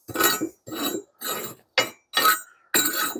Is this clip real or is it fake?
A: real